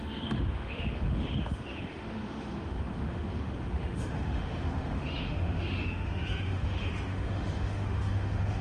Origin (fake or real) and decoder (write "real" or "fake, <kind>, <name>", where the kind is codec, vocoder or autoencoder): fake, autoencoder, DAC-VAE